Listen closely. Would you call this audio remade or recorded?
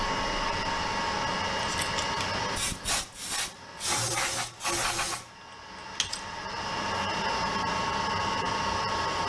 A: recorded